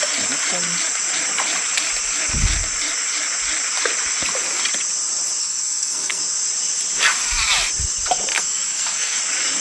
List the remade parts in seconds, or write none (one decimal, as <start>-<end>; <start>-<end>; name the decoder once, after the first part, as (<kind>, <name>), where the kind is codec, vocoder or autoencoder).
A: 5.4-6.2 (codec, SNAC); 8.3-9.2